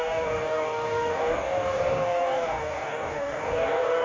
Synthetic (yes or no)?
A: yes